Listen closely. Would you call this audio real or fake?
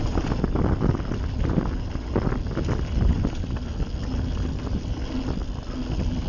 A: real